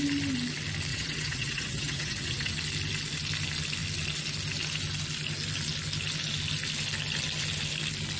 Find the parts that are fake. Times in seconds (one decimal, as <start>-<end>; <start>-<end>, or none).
0.9-2.5